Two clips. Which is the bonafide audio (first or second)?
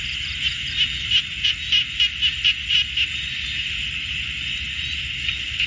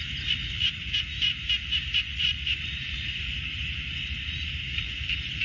first